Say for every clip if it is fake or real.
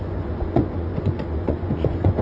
fake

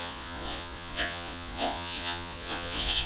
fake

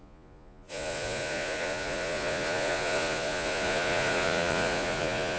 fake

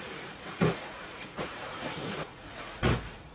fake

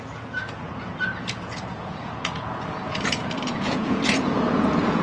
fake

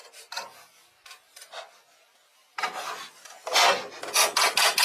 real